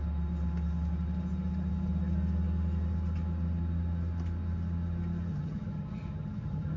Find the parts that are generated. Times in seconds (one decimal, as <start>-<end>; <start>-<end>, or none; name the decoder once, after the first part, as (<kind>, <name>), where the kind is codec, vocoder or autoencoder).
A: 5.3-6.8 (vocoder, HiFi-GAN)